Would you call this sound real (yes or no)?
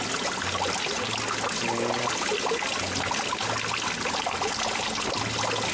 yes